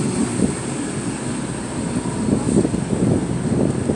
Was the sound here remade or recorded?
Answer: recorded